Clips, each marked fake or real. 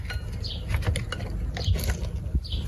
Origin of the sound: real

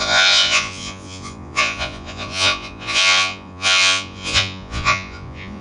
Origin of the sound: fake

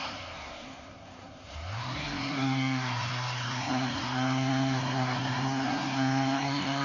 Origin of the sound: fake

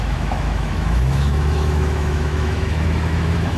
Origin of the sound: fake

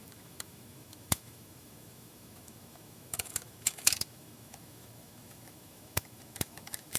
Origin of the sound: fake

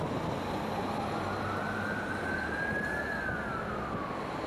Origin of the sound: real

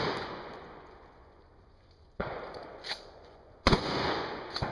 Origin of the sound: fake